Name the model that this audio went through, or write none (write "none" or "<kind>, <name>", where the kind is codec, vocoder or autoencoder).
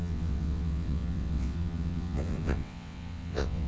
vocoder, WaveNeXt